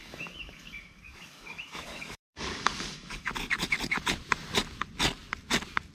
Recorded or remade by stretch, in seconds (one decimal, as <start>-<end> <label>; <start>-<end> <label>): 0.0-3.3 remade; 3.3-5.9 recorded